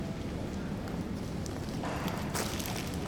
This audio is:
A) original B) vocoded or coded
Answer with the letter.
A